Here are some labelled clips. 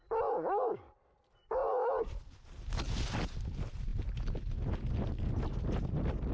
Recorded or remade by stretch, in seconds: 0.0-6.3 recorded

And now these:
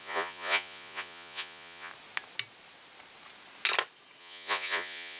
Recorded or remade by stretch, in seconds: 0.0-1.9 remade; 1.9-4.2 recorded; 4.2-5.2 remade

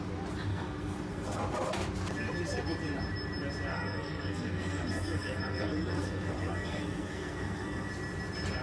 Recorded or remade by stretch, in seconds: 0.0-0.5 recorded; 0.5-1.4 remade; 1.4-3.7 recorded; 3.7-7.9 remade; 7.9-8.6 recorded

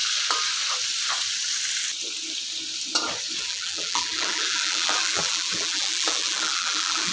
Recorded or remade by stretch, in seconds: 0.0-3.4 recorded; 3.4-7.1 remade

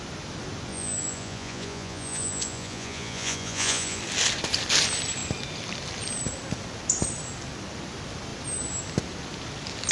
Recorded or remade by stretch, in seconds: 0.0-0.7 recorded; 0.7-4.0 remade; 4.0-9.9 recorded

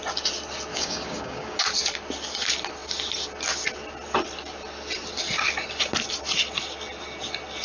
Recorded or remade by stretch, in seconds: 0.0-0.7 recorded; 0.7-1.6 remade; 1.6-7.6 recorded

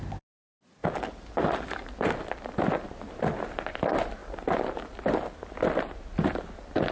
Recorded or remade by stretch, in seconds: 0.0-0.8 recorded; 0.8-2.0 remade; 2.0-6.9 recorded